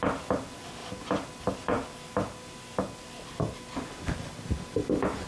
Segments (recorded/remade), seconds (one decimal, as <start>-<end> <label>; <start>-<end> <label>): 0.0-5.3 recorded